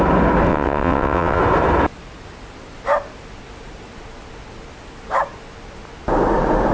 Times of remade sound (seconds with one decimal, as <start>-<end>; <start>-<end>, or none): 0.5-1.4